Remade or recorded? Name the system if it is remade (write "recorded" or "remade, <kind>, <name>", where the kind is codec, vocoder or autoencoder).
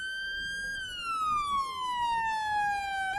recorded